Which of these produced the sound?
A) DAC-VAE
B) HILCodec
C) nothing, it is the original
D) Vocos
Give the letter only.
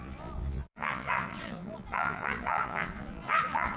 D